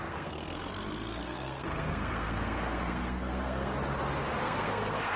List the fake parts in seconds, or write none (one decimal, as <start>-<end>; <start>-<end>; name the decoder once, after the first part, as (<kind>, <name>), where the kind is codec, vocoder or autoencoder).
0.0-0.7 (codec, SNAC); 1.2-3.7; 4.4-5.2